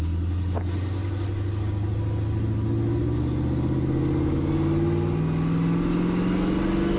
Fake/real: real